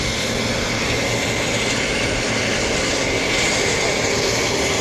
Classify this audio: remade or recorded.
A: recorded